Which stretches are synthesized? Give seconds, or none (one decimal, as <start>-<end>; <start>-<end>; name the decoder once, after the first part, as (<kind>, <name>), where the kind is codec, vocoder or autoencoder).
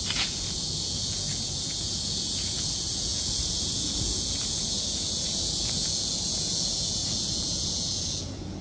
0.0-8.6 (vocoder, Vocos)